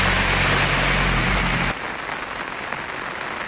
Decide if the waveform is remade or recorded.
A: recorded